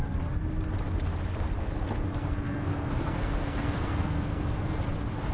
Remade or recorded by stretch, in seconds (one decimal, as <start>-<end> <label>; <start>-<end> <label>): 0.0-1.6 recorded; 1.6-4.8 remade; 4.8-5.3 recorded